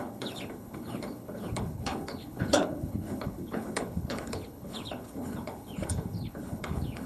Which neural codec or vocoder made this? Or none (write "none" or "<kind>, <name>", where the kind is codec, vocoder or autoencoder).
codec, HILCodec